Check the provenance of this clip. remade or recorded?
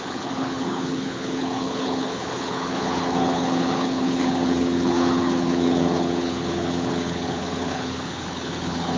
remade